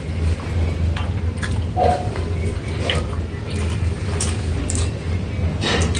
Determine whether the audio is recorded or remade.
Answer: recorded